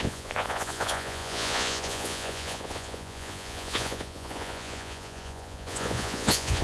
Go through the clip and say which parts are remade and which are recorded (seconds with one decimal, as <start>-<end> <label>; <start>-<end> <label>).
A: 0.0-6.6 remade